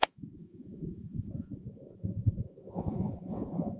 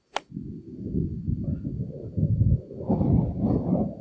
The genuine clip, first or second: second